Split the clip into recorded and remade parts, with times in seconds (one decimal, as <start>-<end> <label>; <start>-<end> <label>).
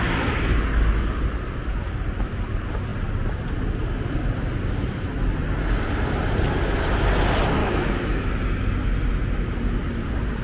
0.0-7.6 recorded; 7.6-8.3 remade; 8.3-10.4 recorded